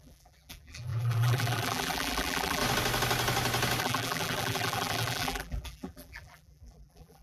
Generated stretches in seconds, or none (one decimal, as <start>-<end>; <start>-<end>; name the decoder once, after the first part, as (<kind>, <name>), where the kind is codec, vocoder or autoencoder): 0.0-2.6 (vocoder, BigVGAN v2); 3.8-7.2